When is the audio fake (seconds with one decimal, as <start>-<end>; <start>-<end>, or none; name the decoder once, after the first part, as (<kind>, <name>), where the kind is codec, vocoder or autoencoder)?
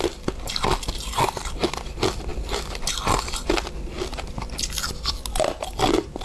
none